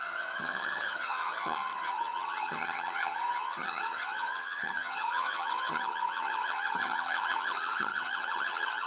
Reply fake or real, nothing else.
fake